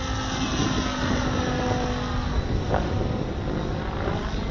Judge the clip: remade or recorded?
recorded